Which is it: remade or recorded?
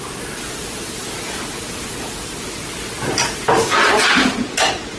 recorded